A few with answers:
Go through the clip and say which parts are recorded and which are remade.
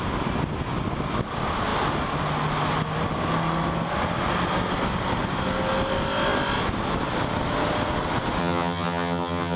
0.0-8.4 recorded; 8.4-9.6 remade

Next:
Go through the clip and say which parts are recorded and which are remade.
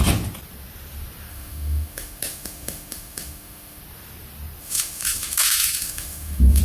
0.0-1.3 recorded; 1.3-3.8 remade; 3.8-4.6 recorded; 4.6-6.6 remade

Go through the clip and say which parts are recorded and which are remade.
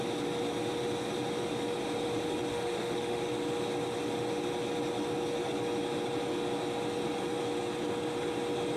0.0-2.5 recorded; 2.5-3.2 remade; 3.2-8.8 recorded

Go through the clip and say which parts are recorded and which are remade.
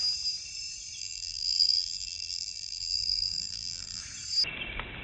0.0-1.0 recorded; 1.0-4.0 remade; 4.0-5.0 recorded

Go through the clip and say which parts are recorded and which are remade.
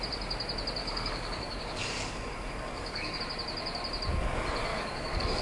0.0-0.8 recorded; 0.8-3.2 remade; 3.2-4.7 recorded; 4.7-5.4 remade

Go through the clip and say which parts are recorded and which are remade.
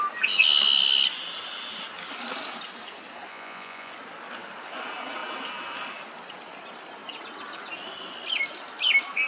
0.0-3.3 recorded; 3.3-3.9 remade; 3.9-9.3 recorded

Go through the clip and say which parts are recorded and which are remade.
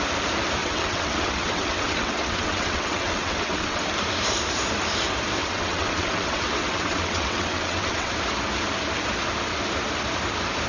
0.0-0.6 recorded; 0.6-3.8 remade; 3.8-5.4 recorded; 5.4-8.1 remade; 8.1-10.7 recorded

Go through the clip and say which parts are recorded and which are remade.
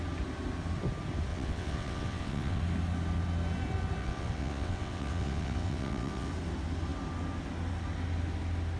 0.0-1.3 recorded; 1.3-2.6 remade; 2.6-4.0 recorded; 4.0-6.3 remade; 6.3-8.8 recorded